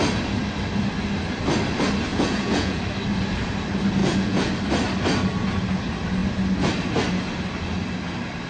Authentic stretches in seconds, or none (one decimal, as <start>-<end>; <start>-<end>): 0.0-2.1; 2.8-4.0; 4.5-8.5